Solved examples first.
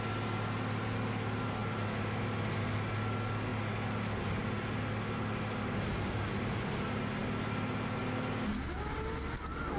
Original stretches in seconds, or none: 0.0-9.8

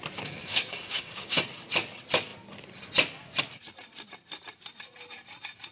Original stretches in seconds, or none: 0.0-0.4; 1.5-5.7

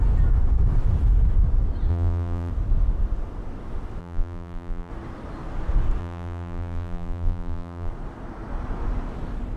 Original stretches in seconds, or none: 0.0-1.9; 2.5-4.0; 4.9-6.0; 7.9-9.6